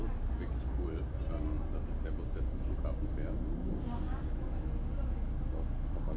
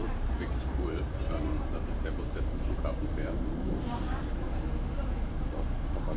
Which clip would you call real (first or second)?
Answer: first